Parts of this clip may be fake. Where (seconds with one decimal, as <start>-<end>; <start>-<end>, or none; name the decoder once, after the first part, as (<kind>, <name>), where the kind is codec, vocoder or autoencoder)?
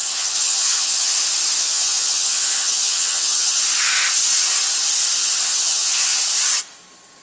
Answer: 0.0-1.2 (vocoder, HiFi-GAN); 1.6-3.6; 5.2-6.2